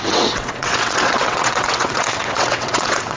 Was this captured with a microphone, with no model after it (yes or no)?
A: no